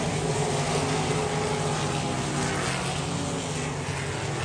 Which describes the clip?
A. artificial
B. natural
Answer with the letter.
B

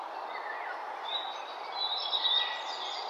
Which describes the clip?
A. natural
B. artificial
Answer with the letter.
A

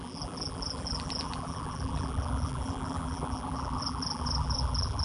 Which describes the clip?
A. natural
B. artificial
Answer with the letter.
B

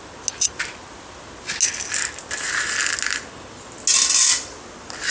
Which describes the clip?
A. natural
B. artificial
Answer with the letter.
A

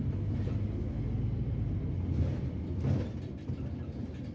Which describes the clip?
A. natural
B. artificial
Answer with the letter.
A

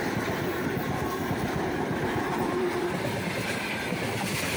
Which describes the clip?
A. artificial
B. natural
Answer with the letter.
A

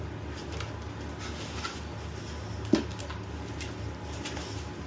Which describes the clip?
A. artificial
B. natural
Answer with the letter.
B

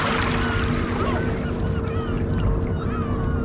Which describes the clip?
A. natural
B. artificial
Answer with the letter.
A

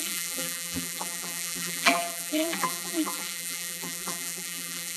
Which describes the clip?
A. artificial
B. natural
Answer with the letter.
A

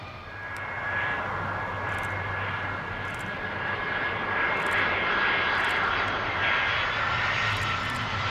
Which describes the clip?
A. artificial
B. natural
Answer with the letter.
B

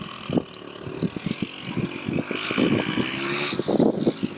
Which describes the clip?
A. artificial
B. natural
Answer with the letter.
B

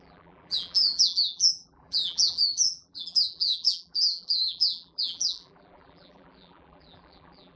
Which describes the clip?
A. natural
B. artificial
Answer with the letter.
B